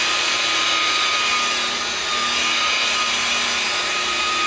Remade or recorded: recorded